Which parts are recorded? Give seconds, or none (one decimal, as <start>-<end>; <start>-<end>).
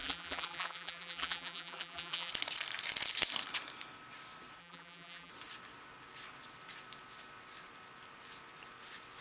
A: 2.3-4.6; 5.3-9.2